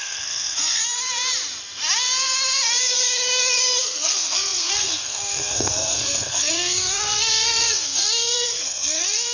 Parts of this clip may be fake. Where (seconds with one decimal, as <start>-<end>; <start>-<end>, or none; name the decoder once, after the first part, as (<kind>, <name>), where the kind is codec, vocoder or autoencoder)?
0.0-0.8 (codec, SNAC); 3.8-9.3

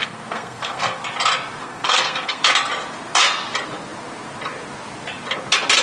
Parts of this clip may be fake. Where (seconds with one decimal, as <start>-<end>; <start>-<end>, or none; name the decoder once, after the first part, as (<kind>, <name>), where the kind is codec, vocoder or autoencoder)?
0.0-1.0 (codec, SNAC); 1.6-2.4

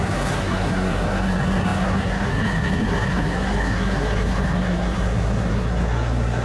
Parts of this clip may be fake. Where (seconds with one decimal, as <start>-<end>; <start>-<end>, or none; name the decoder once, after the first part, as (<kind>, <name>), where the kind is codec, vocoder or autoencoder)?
0.0-6.4 (codec, SNAC)

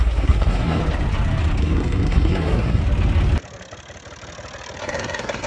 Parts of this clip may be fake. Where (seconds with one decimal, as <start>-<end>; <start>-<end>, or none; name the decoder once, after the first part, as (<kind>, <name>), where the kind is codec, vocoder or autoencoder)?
0.0-0.8 (codec, SNAC); 1.6-2.8; 4.8-5.5

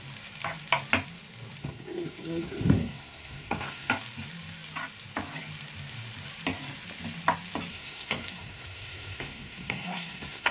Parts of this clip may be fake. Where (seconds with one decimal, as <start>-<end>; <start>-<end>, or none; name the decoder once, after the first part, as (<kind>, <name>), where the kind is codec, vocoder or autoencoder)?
1.6-3.9 (codec, SNAC); 7.7-10.5